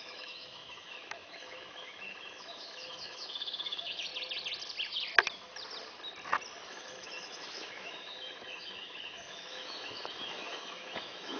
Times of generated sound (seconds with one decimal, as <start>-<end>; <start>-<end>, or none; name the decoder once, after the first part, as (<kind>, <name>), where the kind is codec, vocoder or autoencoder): 0.0-4.1 (autoencoder, DAC-VAE); 6.6-11.4